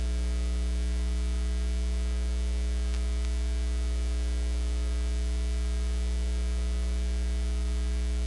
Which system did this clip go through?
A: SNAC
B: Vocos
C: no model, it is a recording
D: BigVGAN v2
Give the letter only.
C